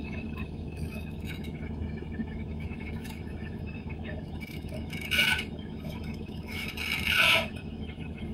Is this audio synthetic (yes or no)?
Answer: yes